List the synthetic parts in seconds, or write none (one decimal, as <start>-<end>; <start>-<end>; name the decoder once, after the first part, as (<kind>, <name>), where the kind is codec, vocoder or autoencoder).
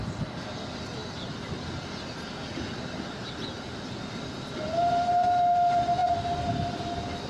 none